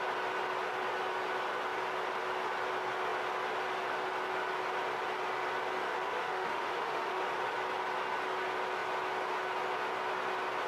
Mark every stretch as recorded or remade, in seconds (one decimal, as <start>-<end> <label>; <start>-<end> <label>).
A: 0.0-5.9 recorded; 5.9-7.2 remade; 7.2-10.7 recorded